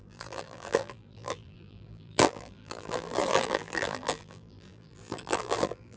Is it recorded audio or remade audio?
remade